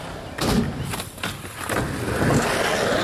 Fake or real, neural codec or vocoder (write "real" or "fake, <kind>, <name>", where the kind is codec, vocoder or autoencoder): real